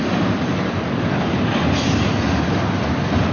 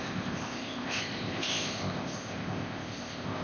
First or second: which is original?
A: first